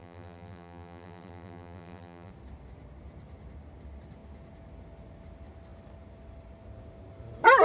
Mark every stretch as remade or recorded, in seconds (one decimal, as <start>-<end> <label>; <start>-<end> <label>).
0.0-2.3 remade; 2.3-7.6 recorded